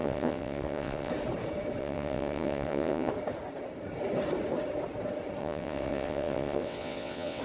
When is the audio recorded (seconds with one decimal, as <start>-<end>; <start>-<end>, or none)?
1.1-1.8; 3.1-5.4